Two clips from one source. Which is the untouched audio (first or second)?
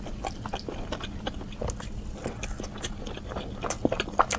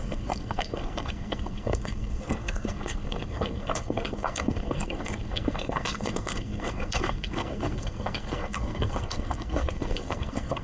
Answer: first